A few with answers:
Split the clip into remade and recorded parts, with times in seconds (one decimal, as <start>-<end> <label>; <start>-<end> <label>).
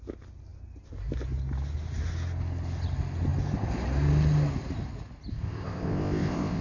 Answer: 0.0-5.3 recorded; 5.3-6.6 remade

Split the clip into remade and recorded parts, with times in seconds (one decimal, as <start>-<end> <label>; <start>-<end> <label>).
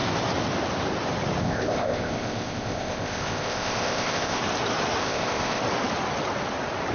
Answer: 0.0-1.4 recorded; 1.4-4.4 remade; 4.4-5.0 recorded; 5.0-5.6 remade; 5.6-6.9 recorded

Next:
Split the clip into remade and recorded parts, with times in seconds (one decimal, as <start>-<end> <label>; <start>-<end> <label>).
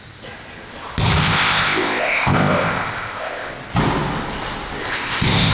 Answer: 0.0-1.2 recorded; 1.2-3.5 remade; 3.5-4.8 recorded; 4.8-5.5 remade